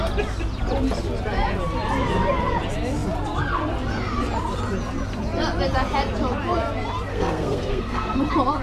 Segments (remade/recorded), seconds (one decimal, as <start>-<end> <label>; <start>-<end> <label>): 0.0-7.1 recorded; 7.1-8.2 remade; 8.2-8.6 recorded